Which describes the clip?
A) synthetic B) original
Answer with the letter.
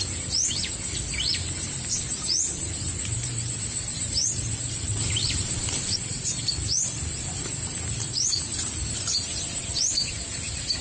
A